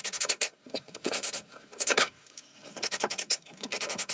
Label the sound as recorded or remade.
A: remade